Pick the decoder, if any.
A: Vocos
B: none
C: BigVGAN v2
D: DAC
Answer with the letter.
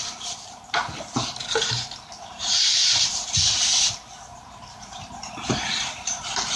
C